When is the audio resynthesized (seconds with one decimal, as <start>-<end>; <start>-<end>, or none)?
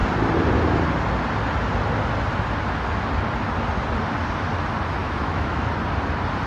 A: 5.0-5.7